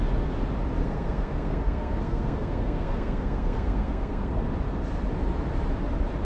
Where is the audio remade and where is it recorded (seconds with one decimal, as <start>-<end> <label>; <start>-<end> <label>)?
0.0-0.8 recorded; 0.8-4.5 remade; 4.5-6.2 recorded